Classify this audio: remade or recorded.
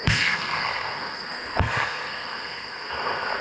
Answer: remade